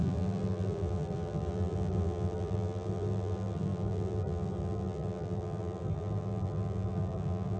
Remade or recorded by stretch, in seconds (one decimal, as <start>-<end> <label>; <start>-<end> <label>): 0.0-7.6 remade